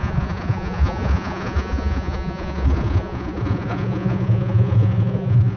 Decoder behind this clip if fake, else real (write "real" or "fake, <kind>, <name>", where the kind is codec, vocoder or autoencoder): fake, vocoder, Vocos